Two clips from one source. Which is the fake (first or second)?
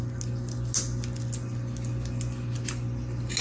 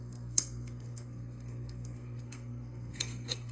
second